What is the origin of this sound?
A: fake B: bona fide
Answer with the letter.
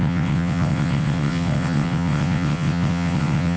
A